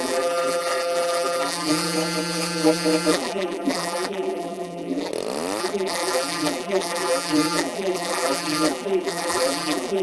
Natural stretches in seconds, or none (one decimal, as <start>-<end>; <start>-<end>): 5.1-5.6

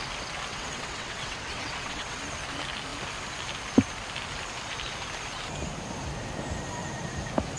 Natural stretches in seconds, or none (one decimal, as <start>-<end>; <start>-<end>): 0.0-0.5; 2.2-7.6

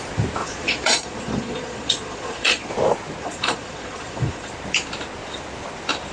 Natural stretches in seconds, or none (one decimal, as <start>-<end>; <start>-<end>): 0.0-0.4; 2.7-3.2; 4.5-6.1

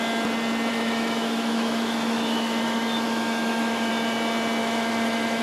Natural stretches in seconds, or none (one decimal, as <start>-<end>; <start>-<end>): 0.0-0.7; 3.9-4.6

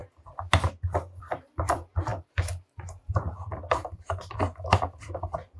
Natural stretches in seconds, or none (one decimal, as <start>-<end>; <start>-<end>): 0.0-1.2; 2.1-3.0

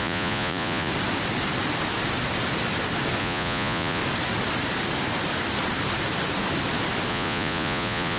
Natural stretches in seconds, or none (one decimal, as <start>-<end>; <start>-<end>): 0.9-3.2; 4.0-7.1

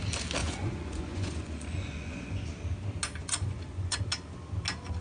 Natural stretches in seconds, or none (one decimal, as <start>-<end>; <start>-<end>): 0.0-0.4; 2.5-3.2; 4.0-5.0